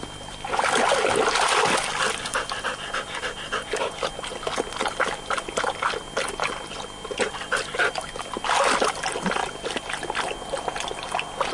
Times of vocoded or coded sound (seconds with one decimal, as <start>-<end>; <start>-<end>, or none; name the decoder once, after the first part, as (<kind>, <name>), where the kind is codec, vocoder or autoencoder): none